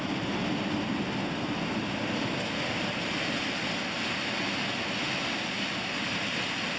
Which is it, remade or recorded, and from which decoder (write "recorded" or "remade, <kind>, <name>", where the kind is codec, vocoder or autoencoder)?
recorded